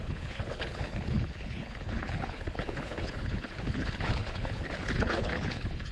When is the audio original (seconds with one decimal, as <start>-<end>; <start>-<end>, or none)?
none